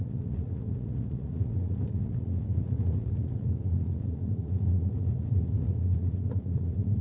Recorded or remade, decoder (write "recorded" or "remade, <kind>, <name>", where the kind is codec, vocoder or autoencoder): remade, vocoder, Vocos